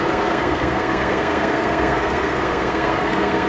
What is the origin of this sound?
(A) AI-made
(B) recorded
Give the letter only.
A